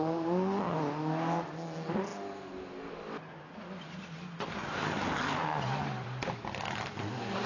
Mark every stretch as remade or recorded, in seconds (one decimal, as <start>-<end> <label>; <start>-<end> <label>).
0.0-7.5 recorded